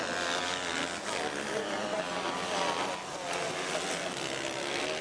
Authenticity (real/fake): real